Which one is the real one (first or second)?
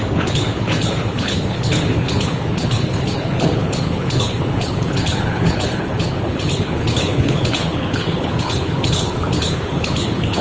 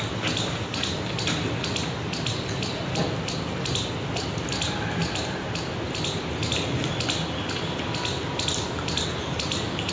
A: second